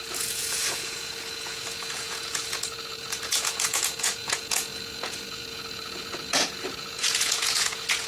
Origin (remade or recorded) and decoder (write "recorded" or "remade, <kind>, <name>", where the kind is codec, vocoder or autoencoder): remade, vocoder, Vocos